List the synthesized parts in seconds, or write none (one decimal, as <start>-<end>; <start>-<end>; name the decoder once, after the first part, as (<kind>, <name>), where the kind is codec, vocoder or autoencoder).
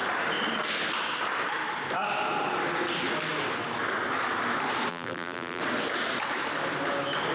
4.9-5.6 (vocoder, BigVGAN v2)